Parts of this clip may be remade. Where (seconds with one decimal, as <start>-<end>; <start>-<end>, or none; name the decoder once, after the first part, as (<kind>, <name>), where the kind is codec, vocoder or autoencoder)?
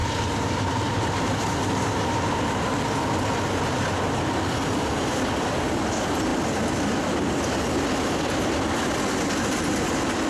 0.0-2.8 (vocoder, BigVGAN v2)